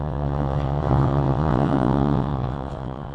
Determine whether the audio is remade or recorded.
remade